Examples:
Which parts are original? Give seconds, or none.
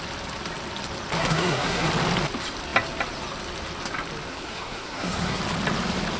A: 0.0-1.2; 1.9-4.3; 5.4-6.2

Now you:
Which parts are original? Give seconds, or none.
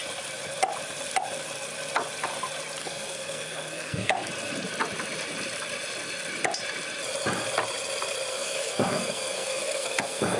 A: 0.0-2.8; 4.3-8.3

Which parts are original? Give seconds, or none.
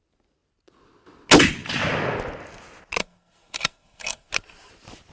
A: 0.0-3.0; 4.3-5.1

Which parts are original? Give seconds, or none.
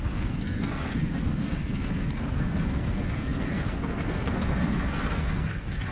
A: none